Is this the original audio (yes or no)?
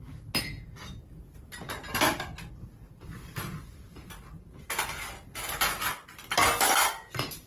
yes